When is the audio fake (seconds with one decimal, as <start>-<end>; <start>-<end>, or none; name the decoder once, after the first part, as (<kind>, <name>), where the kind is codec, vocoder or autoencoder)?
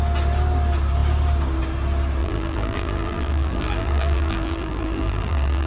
2.2-5.7 (vocoder, BigVGAN v2)